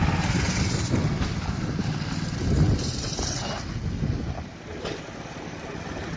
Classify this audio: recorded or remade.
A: recorded